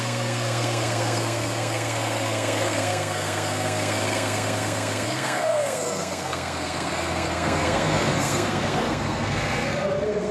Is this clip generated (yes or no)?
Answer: yes